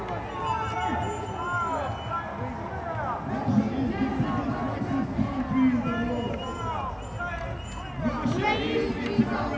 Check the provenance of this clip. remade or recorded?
recorded